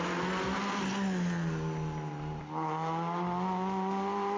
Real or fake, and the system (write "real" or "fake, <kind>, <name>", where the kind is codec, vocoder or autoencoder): real